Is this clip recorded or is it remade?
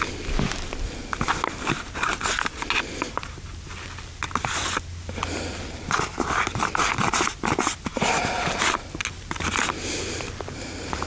recorded